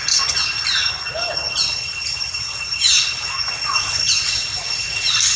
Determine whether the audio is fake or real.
real